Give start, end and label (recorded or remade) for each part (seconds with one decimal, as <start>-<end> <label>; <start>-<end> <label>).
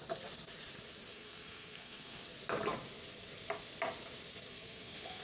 0.0-1.1 recorded; 1.1-2.2 remade; 2.2-4.5 recorded; 4.5-5.2 remade